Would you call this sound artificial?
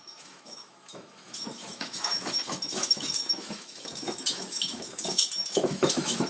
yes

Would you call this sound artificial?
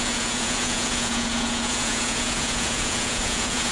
yes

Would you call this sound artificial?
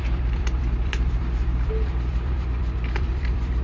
yes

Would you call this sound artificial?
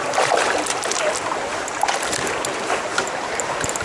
no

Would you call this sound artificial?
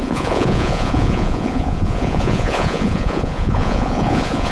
yes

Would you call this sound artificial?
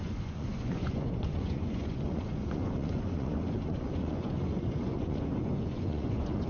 yes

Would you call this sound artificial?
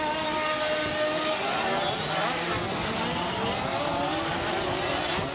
no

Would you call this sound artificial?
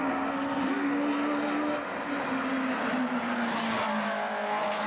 no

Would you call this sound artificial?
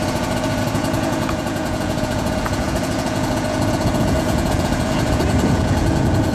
yes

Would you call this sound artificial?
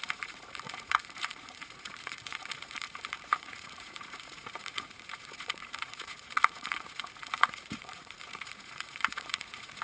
yes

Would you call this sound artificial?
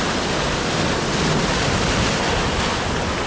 no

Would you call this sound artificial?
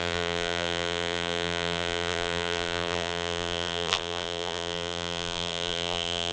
yes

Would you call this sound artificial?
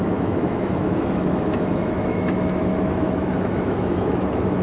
yes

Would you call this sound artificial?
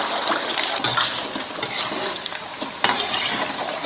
no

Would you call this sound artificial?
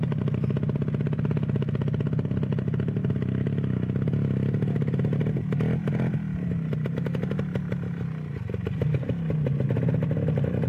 no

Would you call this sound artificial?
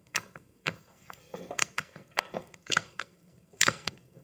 yes